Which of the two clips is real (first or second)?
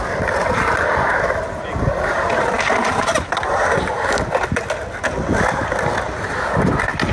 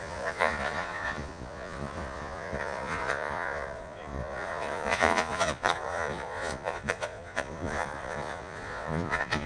first